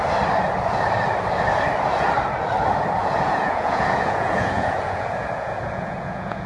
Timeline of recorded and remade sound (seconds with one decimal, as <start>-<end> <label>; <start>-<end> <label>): 0.0-3.0 recorded; 3.0-6.5 remade